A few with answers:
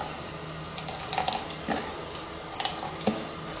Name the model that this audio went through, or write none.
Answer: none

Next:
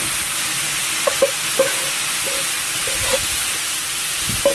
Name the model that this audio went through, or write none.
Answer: none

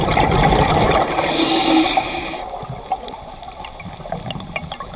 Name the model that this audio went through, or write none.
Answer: none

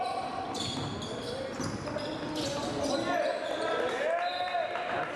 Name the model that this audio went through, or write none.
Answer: none